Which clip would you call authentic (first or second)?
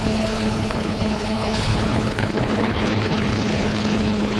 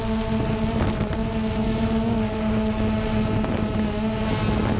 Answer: second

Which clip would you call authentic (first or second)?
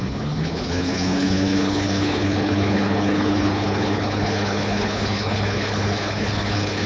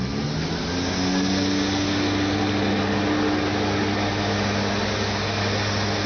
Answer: second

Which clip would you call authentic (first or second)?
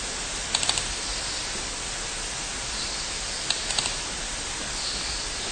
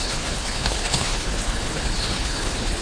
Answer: first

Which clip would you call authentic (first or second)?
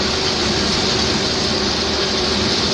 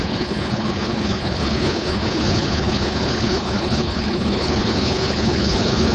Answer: first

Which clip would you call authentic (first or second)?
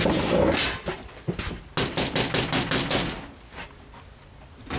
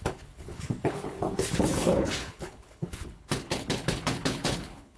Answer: first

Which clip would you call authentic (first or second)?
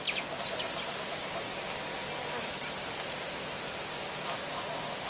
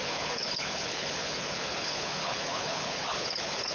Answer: first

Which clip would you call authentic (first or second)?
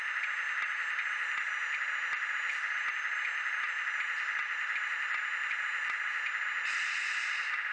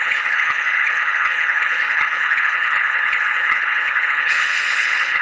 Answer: first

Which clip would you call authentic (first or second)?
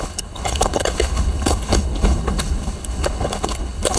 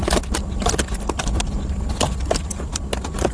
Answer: second